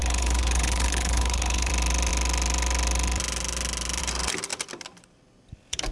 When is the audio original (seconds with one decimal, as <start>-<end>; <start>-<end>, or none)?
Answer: 1.7-5.9